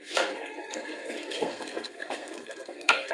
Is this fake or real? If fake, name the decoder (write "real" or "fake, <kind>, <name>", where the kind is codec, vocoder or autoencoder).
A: fake, codec, SNAC